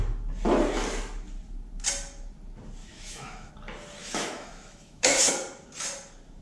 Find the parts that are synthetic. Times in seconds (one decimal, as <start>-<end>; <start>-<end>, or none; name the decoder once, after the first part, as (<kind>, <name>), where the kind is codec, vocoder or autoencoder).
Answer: 2.8-3.5 (autoencoder, DAC-VAE); 4.0-5.3